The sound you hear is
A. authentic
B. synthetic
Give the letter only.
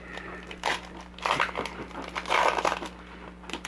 A